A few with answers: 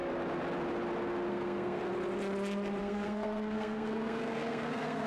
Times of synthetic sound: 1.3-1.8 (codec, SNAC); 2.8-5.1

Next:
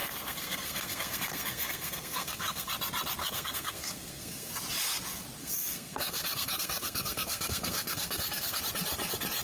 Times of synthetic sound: 0.0-2.7 (codec, SNAC); 3.2-4.5; 5.4-8.6

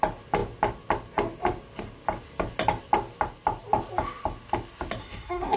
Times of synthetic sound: 5.0-5.6 (codec, SNAC)

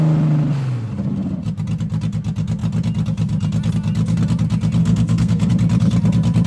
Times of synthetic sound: 4.8-5.5 (codec, SNAC)

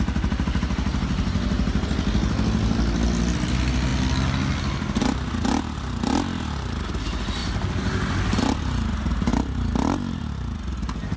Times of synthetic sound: none